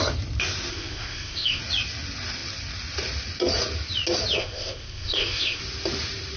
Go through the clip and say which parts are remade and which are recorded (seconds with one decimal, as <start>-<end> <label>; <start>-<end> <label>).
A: 0.0-0.7 recorded; 0.7-1.6 remade; 1.6-4.4 recorded; 4.4-5.6 remade; 5.6-6.4 recorded